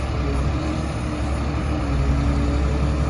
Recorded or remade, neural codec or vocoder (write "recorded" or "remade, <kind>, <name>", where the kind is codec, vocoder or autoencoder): recorded